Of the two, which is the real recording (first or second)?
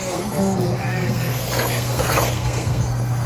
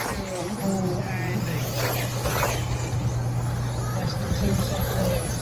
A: second